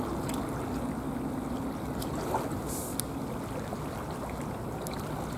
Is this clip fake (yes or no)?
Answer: no